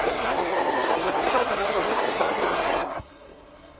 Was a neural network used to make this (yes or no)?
yes